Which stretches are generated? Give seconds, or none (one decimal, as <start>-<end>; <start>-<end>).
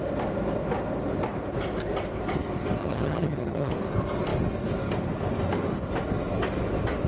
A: 2.8-3.7